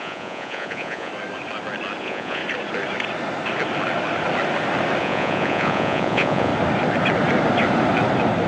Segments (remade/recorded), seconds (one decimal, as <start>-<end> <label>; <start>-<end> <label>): 0.0-1.1 remade; 1.1-2.0 recorded; 2.0-2.4 remade; 2.4-5.0 recorded; 5.0-6.5 remade; 6.5-8.5 recorded